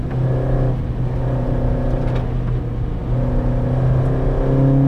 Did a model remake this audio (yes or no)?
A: no